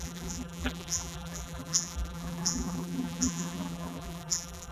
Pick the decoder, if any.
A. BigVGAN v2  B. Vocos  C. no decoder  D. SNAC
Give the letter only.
A